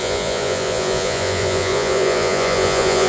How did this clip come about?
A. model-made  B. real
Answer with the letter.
A